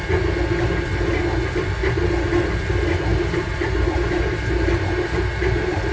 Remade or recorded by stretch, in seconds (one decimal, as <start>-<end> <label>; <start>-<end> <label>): 0.0-3.1 recorded; 3.1-5.9 remade